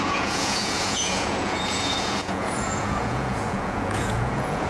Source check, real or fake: fake